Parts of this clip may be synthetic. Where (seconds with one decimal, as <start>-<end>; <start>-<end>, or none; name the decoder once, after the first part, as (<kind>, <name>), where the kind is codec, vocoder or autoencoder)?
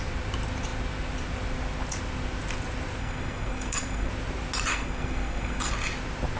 3.0-4.1 (codec, SNAC); 4.7-5.7